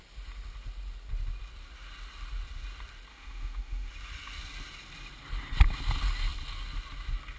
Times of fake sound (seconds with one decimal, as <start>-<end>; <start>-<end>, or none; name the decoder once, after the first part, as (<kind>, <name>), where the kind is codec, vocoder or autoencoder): 3.1-3.9 (autoencoder, DAC-VAE)